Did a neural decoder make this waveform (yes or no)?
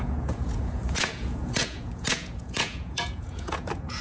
yes